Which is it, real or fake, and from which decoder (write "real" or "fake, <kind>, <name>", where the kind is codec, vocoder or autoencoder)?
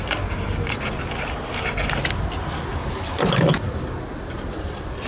real